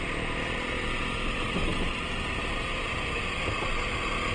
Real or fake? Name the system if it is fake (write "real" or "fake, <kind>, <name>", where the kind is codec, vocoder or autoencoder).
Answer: real